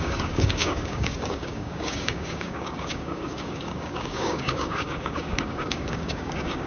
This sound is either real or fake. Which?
fake